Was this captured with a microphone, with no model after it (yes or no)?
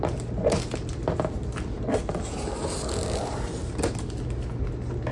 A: yes